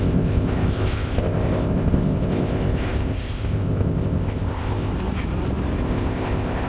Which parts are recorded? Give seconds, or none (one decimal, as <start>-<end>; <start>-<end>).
4.9-5.8